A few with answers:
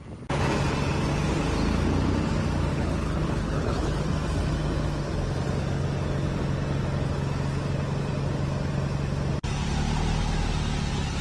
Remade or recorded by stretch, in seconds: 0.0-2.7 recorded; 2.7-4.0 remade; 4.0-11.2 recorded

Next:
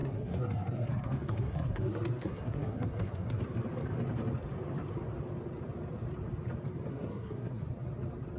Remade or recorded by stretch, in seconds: 0.0-3.4 remade; 3.4-6.9 recorded; 6.9-7.6 remade; 7.6-8.4 recorded

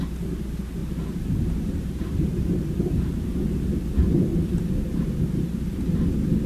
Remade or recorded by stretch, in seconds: 0.0-0.8 recorded; 0.8-3.3 remade; 3.3-6.5 recorded

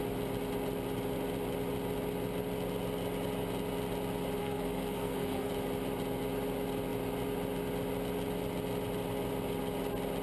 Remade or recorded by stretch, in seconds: 0.0-4.4 recorded; 4.4-5.5 remade; 5.5-10.2 recorded

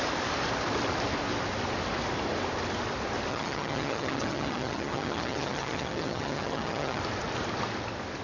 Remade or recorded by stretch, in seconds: 0.0-3.3 recorded; 3.3-7.0 remade; 7.0-8.2 recorded